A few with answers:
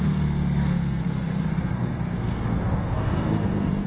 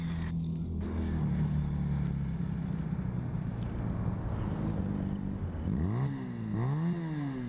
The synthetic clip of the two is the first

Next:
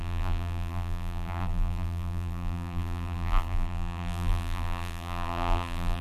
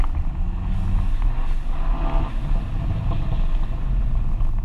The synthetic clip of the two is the first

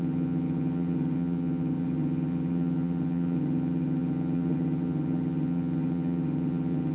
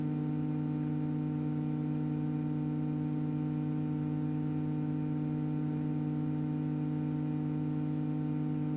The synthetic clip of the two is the first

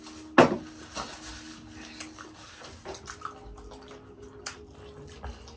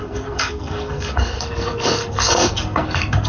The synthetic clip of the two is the second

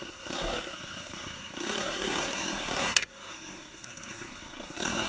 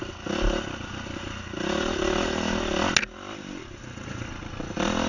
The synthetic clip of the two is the first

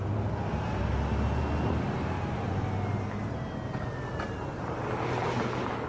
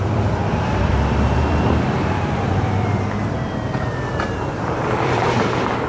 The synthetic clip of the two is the second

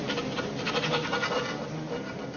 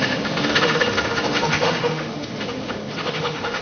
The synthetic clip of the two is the second